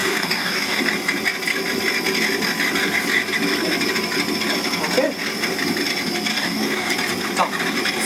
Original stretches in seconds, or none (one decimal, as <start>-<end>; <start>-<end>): 0.9-6.3; 6.9-8.1